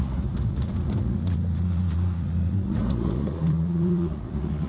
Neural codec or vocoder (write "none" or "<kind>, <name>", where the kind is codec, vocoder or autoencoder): vocoder, Vocos